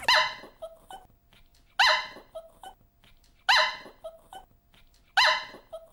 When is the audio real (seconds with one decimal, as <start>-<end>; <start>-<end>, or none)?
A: 0.0-5.9